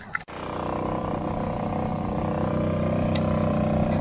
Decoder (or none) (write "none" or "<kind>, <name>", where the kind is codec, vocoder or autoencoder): none